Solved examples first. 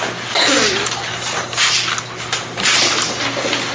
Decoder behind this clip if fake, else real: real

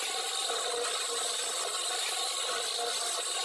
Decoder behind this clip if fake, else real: real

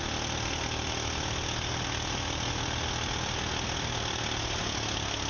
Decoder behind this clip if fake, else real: real